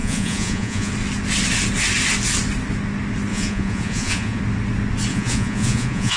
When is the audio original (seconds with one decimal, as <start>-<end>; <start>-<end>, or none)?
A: 0.9-3.3; 4.4-5.1